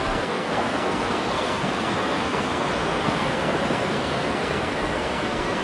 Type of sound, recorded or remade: remade